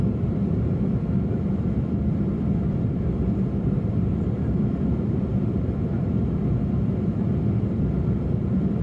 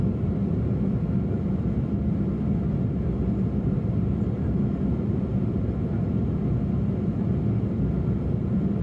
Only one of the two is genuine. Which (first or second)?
second